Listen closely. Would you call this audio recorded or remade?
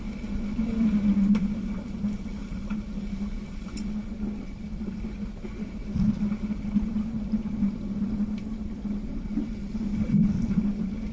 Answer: recorded